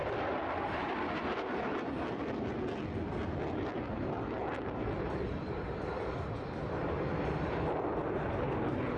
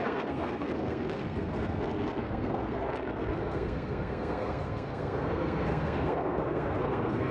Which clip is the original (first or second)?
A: first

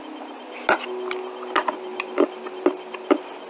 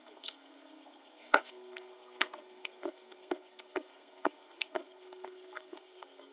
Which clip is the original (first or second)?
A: first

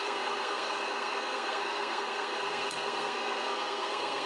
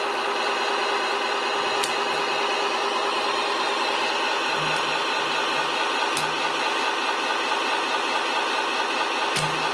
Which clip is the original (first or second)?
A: second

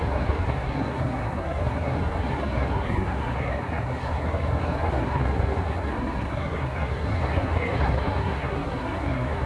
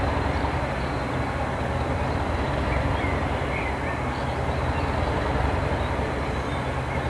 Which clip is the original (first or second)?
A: second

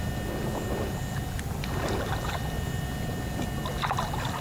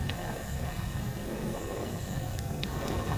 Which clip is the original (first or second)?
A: first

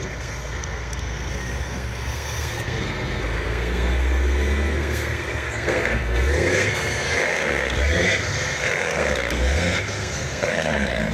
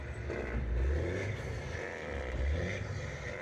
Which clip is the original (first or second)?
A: second